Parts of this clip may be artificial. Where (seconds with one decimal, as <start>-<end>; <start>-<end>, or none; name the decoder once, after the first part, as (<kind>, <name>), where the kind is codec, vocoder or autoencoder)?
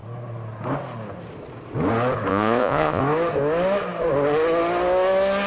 2.3-3.0 (vocoder, Vocos)